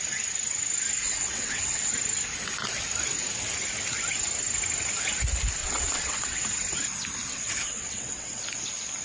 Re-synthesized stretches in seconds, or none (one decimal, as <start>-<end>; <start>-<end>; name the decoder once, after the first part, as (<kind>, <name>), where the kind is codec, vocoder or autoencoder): 1.0-1.9 (vocoder, WaveNeXt); 5.6-6.4; 7.3-8.4